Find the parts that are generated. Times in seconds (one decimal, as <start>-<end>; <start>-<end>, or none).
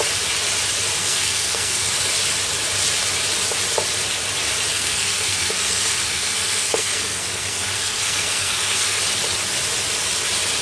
1.0-1.9; 4.7-9.0